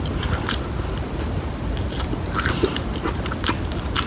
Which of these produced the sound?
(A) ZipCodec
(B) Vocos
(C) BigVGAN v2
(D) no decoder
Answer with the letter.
D